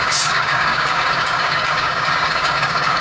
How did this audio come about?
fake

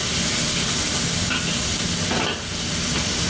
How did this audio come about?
real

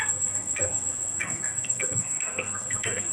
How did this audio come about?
fake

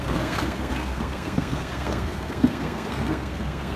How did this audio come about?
fake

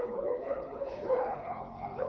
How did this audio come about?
fake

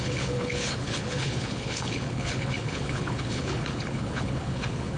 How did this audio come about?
fake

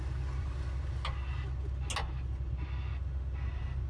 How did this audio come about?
real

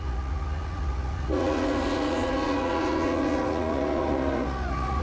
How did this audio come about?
fake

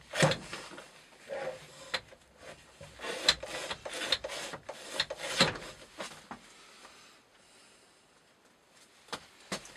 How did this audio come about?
real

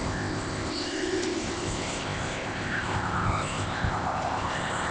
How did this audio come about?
fake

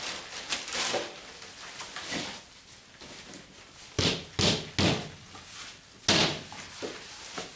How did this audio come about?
real